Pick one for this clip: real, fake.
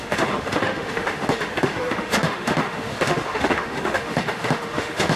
fake